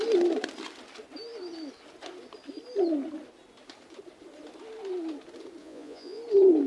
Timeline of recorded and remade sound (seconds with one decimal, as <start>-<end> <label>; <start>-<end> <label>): 0.0-5.6 recorded; 5.6-6.2 remade; 6.2-6.7 recorded